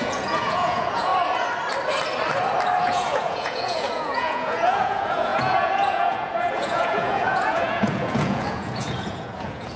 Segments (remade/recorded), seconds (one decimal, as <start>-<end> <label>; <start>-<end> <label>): 0.0-1.1 remade; 1.1-2.8 recorded; 2.8-9.8 remade